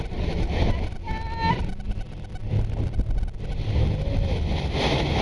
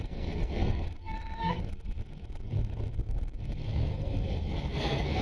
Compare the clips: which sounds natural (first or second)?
first